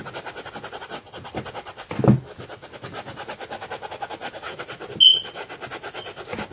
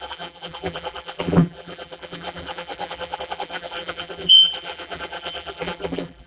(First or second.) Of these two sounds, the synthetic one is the second